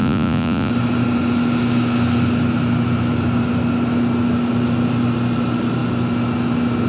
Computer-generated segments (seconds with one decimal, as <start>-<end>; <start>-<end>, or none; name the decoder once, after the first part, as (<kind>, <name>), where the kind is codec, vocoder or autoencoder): 0.0-0.7 (vocoder, Vocos)